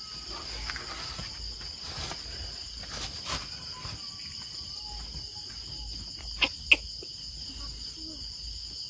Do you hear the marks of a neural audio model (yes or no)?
no